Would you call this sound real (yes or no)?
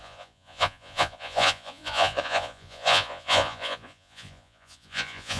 no